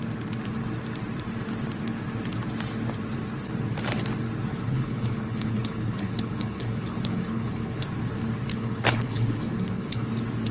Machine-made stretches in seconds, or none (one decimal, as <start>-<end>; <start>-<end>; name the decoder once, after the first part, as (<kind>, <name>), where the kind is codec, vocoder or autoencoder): 4.5-7.8 (codec, HILCodec); 8.5-10.1